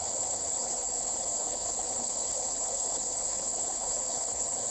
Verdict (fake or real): fake